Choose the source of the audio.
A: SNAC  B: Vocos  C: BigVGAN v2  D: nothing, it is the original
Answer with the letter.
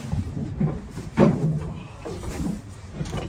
C